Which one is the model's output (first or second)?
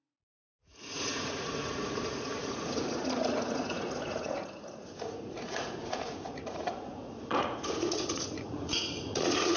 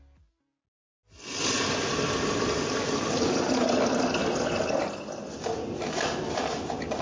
first